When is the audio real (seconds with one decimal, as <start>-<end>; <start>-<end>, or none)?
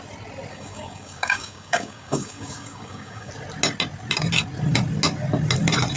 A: 0.0-0.5; 3.3-6.0